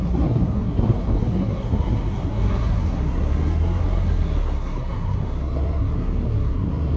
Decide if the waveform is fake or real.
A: fake